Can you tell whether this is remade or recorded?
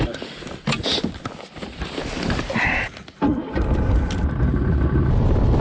recorded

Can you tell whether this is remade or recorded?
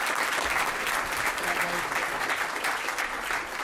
recorded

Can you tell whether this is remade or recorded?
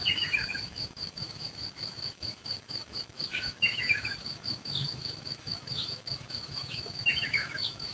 remade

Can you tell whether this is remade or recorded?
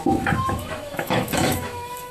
remade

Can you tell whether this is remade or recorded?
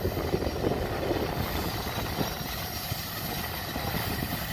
recorded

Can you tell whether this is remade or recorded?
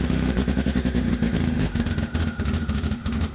remade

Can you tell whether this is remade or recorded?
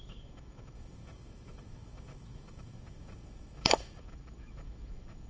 remade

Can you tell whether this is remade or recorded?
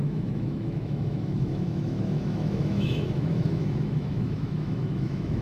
remade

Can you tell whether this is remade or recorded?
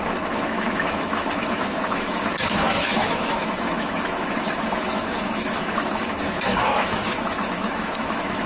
remade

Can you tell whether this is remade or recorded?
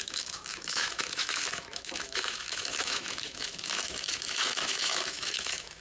remade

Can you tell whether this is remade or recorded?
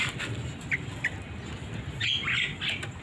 recorded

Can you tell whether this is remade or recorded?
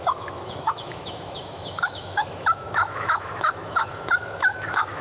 remade